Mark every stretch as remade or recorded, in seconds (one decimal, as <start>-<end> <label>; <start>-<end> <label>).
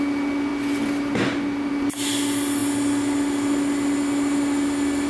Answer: 0.0-5.1 recorded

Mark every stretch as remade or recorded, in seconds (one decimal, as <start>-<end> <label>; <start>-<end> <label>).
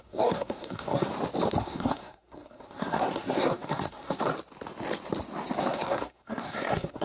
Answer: 0.0-1.1 remade; 1.1-1.6 recorded; 1.6-4.3 remade; 4.3-5.6 recorded; 5.6-7.0 remade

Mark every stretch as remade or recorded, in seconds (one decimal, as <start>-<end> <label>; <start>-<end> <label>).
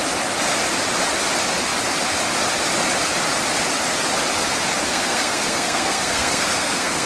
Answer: 0.0-4.9 recorded; 4.9-7.1 remade